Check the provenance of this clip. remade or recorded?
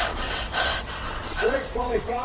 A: remade